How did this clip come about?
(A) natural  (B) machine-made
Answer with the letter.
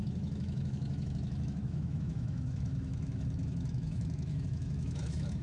B